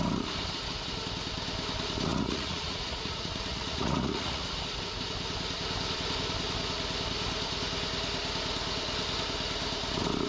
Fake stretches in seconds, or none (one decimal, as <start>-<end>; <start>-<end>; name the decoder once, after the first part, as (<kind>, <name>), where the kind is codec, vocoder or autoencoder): 2.1-4.5 (vocoder, Vocos)